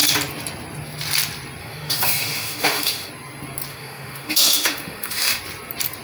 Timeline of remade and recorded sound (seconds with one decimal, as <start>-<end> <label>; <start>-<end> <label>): 0.0-1.6 recorded; 1.6-3.1 remade; 3.1-3.7 recorded; 3.7-5.4 remade; 5.4-6.0 recorded